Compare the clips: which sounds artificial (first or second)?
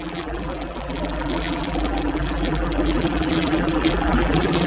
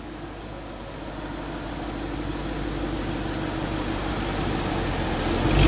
first